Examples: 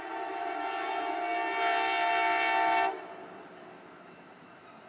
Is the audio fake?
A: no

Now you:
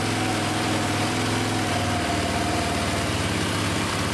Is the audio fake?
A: no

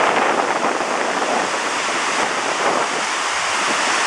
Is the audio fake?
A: no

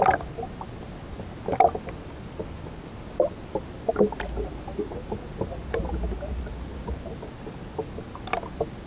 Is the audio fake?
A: no